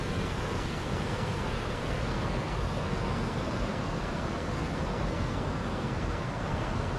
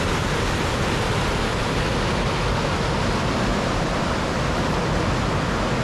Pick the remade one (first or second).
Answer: first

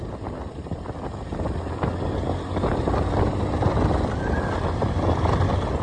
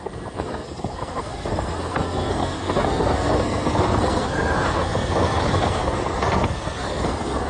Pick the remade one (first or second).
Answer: second